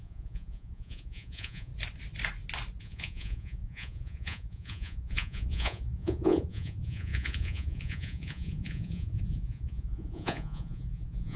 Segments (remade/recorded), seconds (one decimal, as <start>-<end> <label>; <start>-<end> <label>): 0.0-1.7 remade; 1.7-2.8 recorded; 2.8-11.4 remade